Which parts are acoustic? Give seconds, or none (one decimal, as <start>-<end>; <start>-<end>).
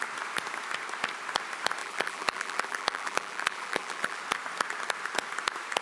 0.0-1.8; 4.2-5.8